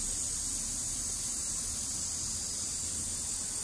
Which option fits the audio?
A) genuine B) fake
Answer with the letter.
A